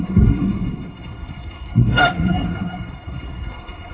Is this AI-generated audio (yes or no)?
yes